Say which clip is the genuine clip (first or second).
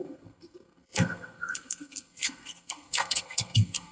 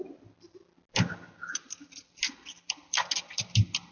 second